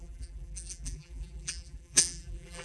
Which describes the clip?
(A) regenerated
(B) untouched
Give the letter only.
A